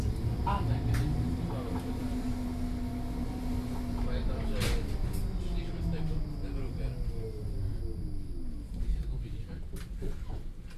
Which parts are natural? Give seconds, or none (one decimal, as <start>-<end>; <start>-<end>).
0.0-10.8